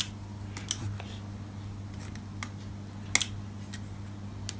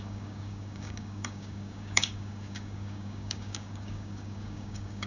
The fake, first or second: second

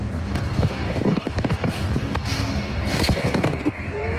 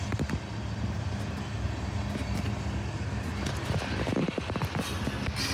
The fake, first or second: first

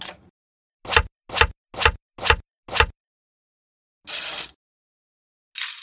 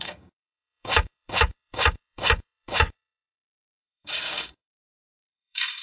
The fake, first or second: second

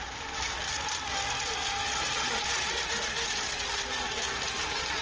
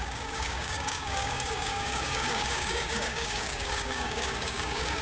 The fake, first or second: second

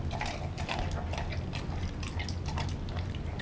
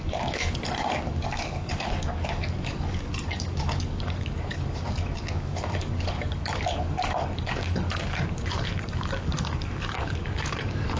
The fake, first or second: second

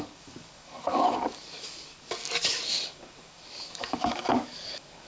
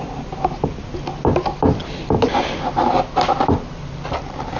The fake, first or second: first